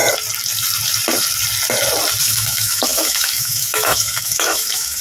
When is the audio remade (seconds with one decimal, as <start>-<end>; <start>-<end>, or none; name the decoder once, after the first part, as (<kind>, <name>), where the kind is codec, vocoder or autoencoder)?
2.2-5.0 (autoencoder, DAC-VAE)